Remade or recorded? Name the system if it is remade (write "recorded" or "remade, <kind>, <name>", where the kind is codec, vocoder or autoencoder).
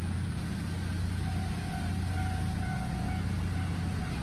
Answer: recorded